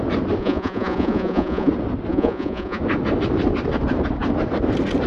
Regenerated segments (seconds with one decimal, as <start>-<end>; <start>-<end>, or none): 0.4-1.7; 2.1-2.8